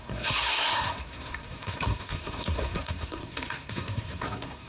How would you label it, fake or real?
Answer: fake